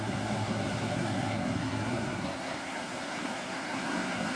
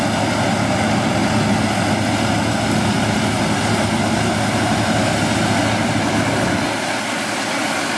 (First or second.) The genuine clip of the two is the second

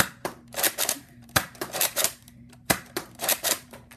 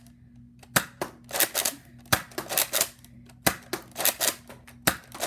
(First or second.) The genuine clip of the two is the second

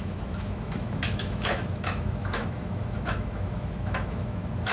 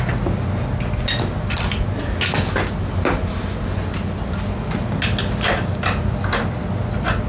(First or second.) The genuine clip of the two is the second